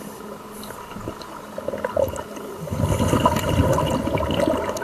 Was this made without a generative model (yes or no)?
yes